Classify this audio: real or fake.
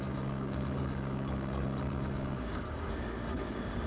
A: fake